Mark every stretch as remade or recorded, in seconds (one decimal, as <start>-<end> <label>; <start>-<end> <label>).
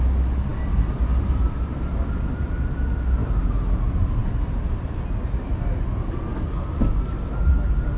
0.0-8.0 recorded